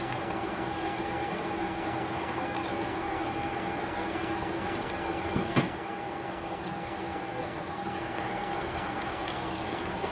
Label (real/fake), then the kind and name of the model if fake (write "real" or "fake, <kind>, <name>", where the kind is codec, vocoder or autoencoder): fake, codec, SNAC